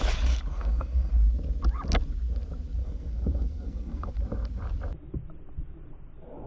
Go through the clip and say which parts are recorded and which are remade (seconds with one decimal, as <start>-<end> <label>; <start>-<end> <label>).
0.0-0.5 recorded; 0.5-1.1 remade; 1.1-2.8 recorded; 2.8-4.1 remade; 4.1-6.5 recorded